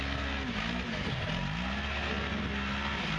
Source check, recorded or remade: recorded